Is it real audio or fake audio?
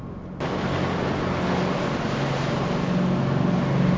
real